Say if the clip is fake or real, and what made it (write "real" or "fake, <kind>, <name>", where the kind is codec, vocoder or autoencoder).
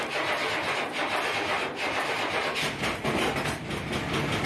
real